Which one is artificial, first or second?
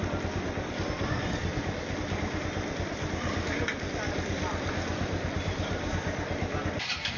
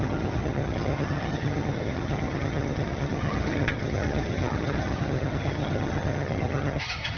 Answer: second